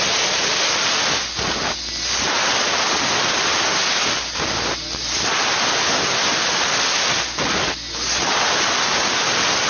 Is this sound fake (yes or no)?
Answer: no